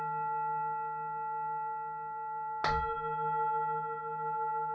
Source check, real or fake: real